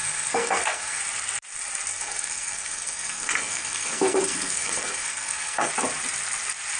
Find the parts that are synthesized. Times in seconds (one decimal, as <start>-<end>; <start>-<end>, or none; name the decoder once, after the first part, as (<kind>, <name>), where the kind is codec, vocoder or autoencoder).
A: 0.0-1.0 (codec, SNAC); 1.9-5.7

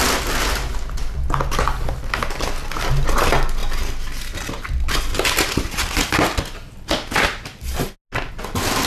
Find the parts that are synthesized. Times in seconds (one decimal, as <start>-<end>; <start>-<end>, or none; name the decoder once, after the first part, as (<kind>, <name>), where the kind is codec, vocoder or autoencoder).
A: none

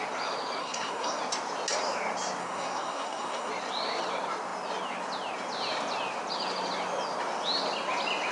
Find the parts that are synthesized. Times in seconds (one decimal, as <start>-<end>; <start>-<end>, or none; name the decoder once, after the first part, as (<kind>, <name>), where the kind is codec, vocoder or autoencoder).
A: 0.6-1.2 (codec, SNAC); 2.4-3.5

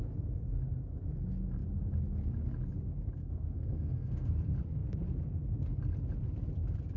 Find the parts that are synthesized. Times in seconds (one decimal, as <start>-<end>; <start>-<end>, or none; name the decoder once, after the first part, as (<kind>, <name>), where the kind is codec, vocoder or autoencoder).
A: 3.2-4.3 (codec, SNAC)

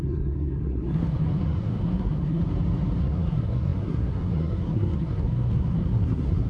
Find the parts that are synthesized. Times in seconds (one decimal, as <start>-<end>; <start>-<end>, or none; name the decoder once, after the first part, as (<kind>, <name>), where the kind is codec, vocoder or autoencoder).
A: 0.0-2.4 (codec, SNAC); 3.0-6.5